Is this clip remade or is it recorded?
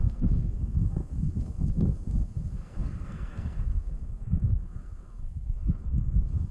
remade